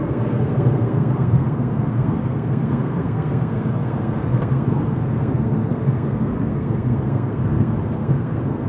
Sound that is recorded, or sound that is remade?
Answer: remade